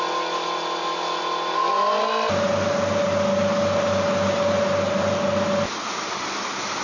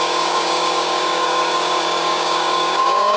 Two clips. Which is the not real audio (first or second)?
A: second